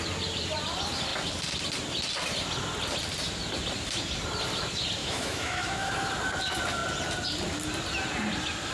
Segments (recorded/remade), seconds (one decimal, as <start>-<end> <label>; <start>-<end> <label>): 0.0-5.0 recorded; 5.0-6.1 remade; 6.1-8.7 recorded